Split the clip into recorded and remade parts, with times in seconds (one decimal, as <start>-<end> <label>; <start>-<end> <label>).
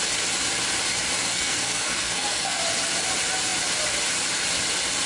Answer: 0.0-1.3 recorded; 1.3-2.6 remade; 2.6-5.1 recorded